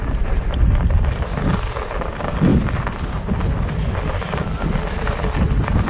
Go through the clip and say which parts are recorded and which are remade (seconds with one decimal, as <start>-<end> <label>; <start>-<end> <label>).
0.0-5.9 recorded